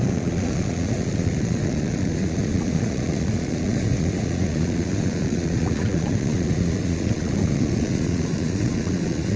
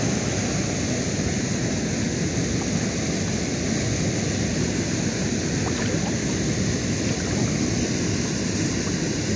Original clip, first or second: second